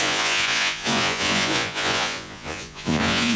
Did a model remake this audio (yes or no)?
yes